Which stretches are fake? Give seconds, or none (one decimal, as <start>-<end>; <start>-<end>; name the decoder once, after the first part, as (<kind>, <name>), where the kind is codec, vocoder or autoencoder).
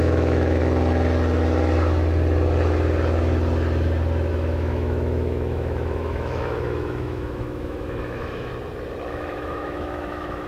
0.0-0.6 (autoencoder, DAC-VAE); 4.3-8.5; 9.1-10.5